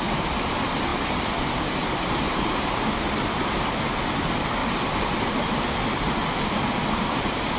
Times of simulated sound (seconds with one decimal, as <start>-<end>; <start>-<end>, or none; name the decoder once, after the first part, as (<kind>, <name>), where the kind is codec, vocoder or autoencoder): 1.8-2.5 (vocoder, BigVGAN v2); 4.6-7.6